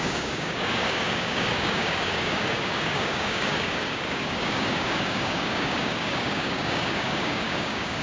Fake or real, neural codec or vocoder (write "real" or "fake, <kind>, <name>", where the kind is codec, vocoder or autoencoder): fake, codec, DAC